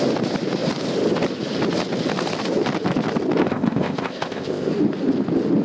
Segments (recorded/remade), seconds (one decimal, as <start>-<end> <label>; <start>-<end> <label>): 0.0-3.4 recorded; 3.4-4.7 remade; 4.7-5.6 recorded